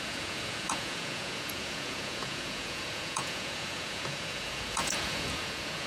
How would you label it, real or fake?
fake